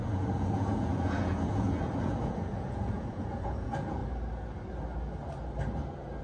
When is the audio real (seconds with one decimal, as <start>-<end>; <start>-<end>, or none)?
4.0-6.2